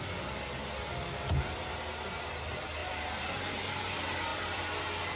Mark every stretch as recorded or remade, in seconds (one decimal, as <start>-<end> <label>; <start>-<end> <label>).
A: 0.0-2.8 recorded; 2.8-3.8 remade; 3.8-5.2 recorded